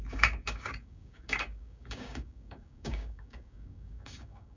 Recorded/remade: remade